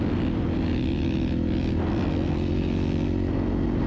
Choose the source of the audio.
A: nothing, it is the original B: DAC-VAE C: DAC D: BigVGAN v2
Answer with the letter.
A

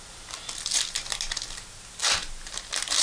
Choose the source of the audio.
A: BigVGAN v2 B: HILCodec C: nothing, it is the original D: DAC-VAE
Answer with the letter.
C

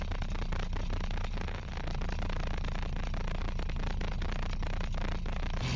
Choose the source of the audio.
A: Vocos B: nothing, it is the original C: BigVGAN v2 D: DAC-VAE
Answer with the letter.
B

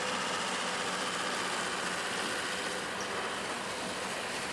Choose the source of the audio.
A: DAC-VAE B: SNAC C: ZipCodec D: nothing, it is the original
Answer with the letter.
D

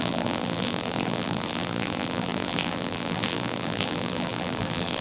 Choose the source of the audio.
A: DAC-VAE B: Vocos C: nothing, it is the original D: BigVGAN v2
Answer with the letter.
D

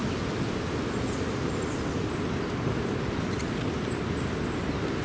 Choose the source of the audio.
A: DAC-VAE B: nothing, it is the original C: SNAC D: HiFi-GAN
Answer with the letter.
B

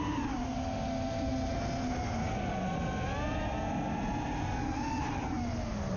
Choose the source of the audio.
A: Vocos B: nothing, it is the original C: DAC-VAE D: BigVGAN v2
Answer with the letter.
B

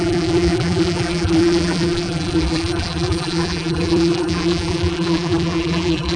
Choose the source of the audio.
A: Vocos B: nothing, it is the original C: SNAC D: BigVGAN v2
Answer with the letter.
D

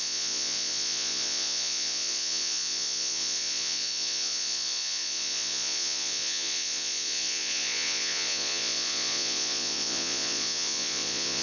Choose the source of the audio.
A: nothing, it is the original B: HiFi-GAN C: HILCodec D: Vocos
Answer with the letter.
D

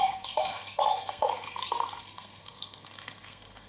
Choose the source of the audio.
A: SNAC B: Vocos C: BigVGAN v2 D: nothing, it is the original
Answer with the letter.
A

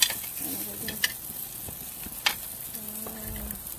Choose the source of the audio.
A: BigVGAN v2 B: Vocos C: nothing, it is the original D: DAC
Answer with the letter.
C